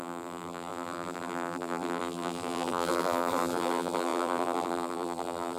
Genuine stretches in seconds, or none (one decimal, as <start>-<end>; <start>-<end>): none